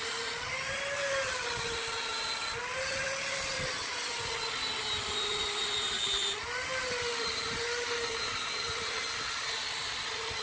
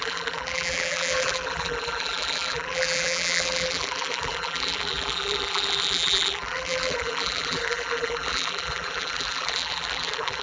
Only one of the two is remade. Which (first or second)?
second